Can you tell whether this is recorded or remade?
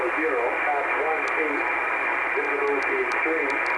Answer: recorded